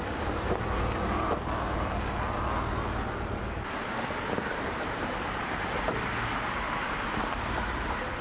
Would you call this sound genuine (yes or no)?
no